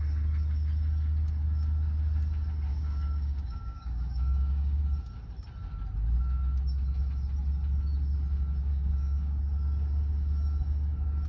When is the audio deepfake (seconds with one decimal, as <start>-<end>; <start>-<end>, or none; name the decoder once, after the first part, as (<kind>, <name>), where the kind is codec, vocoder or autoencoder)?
2.7-4.8 (codec, DAC); 8.7-9.4